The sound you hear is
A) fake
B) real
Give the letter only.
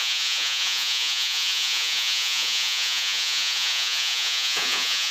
A